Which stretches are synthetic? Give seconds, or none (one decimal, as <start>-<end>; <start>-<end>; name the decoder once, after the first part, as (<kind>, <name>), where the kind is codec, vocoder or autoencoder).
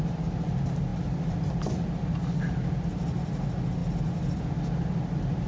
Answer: none